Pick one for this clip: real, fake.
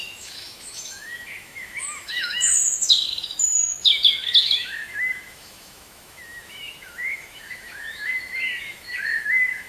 fake